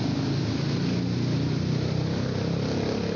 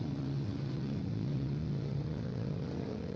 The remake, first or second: second